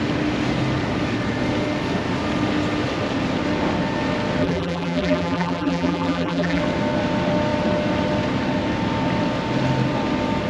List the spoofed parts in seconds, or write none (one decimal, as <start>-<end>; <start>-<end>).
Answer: 4.4-6.6

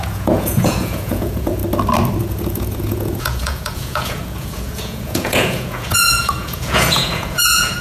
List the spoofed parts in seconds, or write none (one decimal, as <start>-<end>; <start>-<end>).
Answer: 0.0-1.6; 2.2-7.8

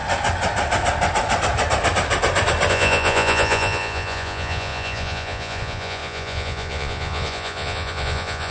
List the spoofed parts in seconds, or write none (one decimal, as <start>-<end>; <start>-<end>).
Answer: 2.7-8.5

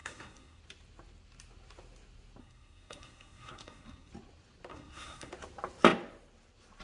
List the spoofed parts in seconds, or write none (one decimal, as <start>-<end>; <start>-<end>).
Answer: 0.0-0.6; 2.4-4.1; 4.7-5.3

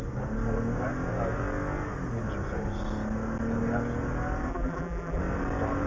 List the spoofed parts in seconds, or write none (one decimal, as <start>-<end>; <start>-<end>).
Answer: 4.5-5.2

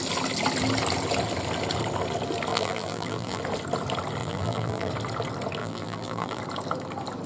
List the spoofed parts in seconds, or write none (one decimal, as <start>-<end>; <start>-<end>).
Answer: 2.5-3.4; 4.2-4.9; 5.6-6.4